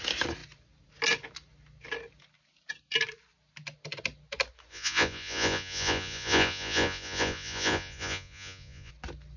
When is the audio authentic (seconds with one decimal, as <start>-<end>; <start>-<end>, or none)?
0.0-4.7; 8.9-9.4